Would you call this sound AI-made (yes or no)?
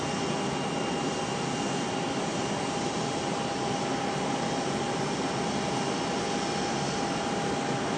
no